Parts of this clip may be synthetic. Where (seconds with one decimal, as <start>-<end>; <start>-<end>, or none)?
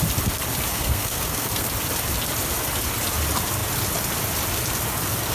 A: 0.7-1.7